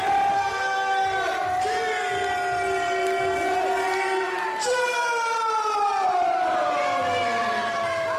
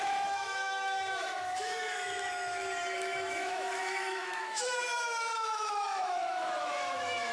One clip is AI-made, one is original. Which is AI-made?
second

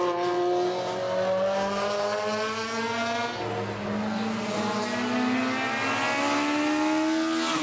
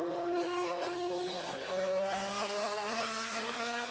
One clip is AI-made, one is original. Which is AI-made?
second